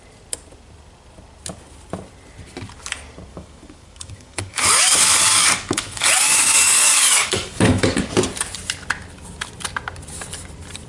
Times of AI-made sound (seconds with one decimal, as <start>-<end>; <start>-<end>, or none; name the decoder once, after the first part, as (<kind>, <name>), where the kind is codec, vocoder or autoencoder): 3.3-8.1 (codec, DAC)